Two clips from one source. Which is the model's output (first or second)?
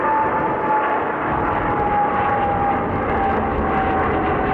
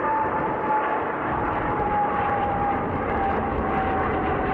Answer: second